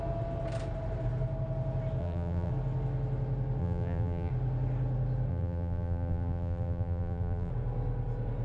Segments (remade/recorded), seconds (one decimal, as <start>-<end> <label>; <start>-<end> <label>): 0.0-2.0 recorded; 2.0-2.5 remade; 2.5-3.6 recorded; 3.6-4.3 remade; 4.3-5.3 recorded; 5.3-7.5 remade; 7.5-8.4 recorded